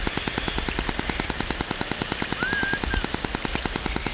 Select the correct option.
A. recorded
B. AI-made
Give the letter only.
A